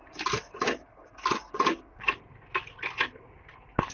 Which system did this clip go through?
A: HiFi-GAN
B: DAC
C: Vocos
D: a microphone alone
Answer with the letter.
D